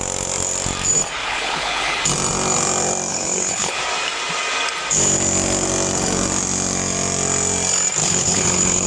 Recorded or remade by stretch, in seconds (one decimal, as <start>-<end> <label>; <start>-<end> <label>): 0.0-1.2 recorded; 1.2-2.0 remade; 2.0-3.1 recorded; 3.1-3.8 remade; 3.8-8.0 recorded; 8.0-8.9 remade